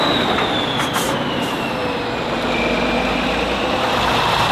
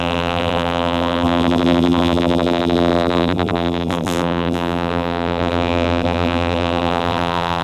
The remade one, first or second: second